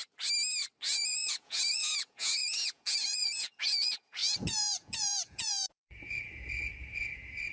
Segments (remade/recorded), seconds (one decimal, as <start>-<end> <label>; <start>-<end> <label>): 0.0-0.8 recorded; 0.8-7.5 remade